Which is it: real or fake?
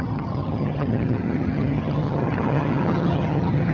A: fake